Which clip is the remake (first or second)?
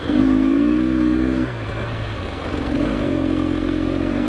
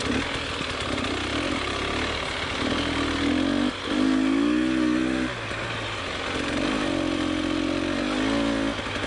first